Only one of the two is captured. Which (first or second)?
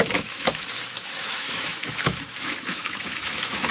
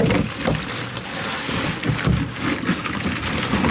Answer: second